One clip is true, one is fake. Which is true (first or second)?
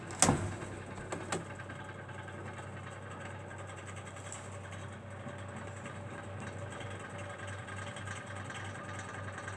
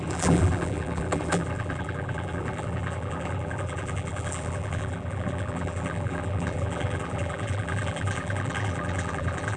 first